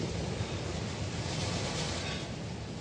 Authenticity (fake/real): real